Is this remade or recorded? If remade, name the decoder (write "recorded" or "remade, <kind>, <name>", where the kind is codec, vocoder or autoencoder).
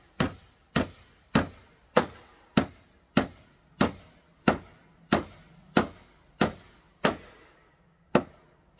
recorded